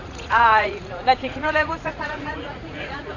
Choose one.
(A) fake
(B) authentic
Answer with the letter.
A